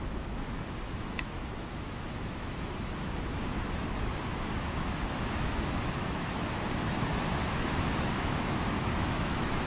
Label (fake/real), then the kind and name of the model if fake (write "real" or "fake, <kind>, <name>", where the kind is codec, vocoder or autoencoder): fake, autoencoder, DAC-VAE